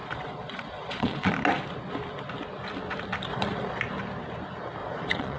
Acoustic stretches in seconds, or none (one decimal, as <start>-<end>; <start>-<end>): 1.3-3.3; 3.8-4.8